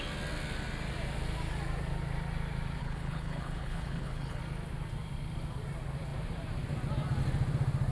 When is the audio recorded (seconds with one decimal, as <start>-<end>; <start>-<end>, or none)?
0.0-2.8; 4.4-7.9